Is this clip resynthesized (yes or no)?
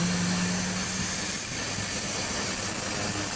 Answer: no